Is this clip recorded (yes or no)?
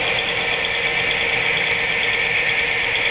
no